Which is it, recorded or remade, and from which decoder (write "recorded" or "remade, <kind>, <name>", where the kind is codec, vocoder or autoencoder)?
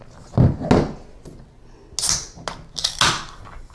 recorded